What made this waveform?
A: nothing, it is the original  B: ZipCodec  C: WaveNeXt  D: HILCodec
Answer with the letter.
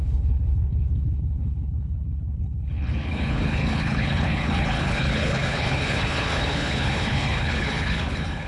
D